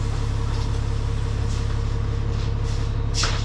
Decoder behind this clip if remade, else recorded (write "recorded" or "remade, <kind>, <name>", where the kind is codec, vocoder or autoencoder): recorded